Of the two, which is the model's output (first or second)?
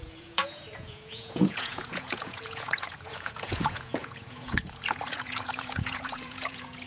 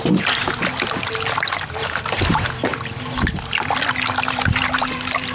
first